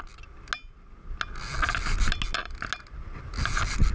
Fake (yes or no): no